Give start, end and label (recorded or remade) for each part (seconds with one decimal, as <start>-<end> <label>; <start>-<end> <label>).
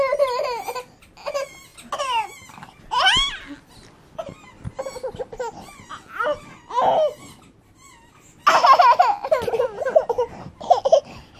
0.0-11.4 recorded